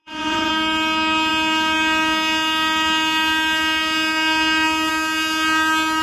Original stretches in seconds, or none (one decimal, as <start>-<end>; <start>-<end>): 0.5-6.0